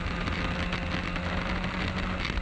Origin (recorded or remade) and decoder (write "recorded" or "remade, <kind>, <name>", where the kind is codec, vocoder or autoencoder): recorded